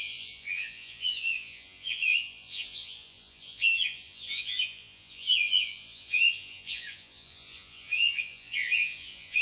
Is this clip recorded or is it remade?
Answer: remade